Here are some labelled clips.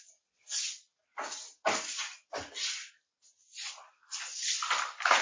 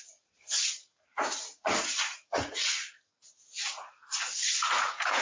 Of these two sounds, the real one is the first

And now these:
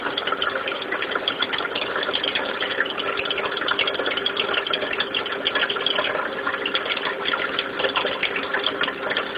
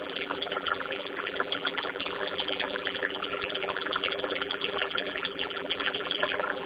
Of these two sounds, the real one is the first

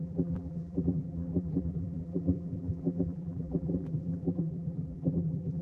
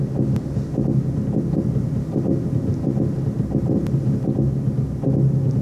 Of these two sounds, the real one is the second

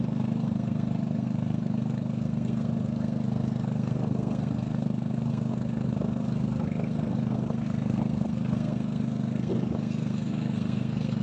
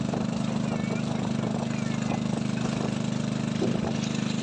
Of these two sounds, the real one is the second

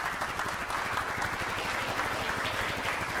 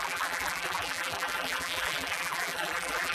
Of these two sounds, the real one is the first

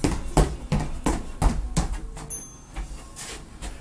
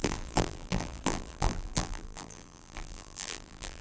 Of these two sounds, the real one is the first